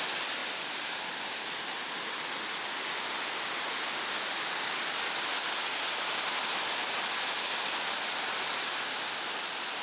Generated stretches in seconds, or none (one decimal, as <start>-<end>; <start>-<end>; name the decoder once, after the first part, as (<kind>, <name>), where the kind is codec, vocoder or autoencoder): none